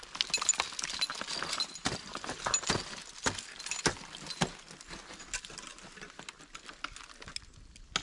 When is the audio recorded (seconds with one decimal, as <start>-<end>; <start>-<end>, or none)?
0.0-8.0